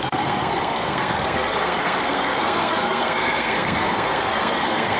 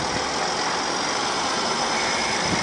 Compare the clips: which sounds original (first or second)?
second